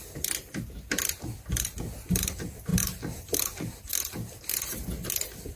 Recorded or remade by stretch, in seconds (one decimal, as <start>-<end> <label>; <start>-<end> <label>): 0.0-5.6 recorded